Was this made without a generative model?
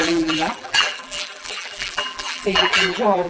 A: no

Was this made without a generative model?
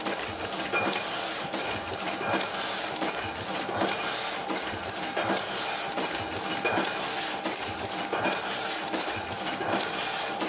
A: yes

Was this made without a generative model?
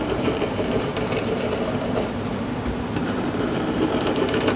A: no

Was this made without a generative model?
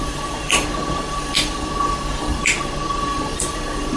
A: no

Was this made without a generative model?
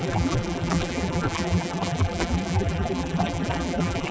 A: no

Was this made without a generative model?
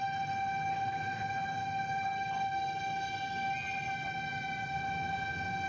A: yes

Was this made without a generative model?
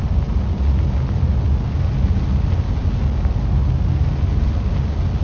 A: yes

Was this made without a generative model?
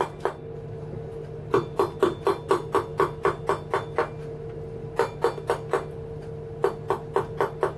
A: yes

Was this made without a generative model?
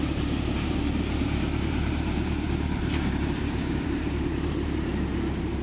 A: no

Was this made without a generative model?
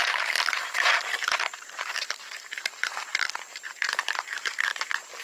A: no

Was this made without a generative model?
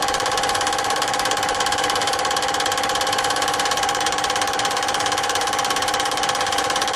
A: no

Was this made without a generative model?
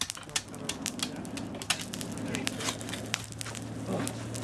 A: yes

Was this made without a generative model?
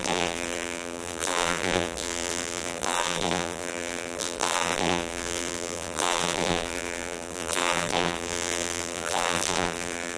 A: no